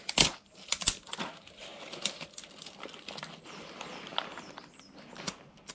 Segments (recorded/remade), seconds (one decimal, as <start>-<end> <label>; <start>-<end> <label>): 0.0-5.7 recorded